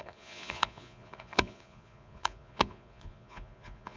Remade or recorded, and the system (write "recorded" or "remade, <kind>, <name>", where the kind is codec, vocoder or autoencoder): remade, vocoder, Vocos